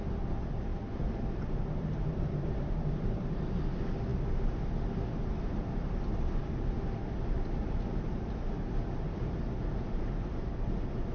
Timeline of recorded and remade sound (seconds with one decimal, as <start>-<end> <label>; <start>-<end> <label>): 0.0-0.7 recorded; 0.7-3.5 remade; 3.5-11.1 recorded